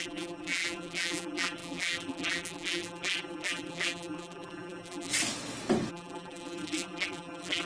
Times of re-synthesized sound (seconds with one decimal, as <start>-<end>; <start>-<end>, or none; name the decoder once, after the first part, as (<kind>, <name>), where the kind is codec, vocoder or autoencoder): 0.0-5.1 (vocoder, BigVGAN v2); 5.9-7.7